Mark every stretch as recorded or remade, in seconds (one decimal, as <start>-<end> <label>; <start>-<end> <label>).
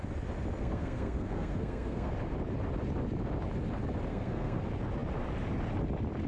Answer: 0.0-0.6 recorded; 0.6-2.1 remade; 2.1-4.1 recorded; 4.1-4.6 remade; 4.6-6.3 recorded